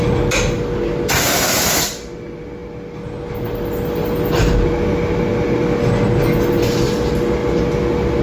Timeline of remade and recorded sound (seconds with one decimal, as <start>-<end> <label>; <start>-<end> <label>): 0.0-8.2 recorded